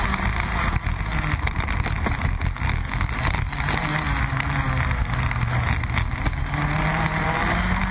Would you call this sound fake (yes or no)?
no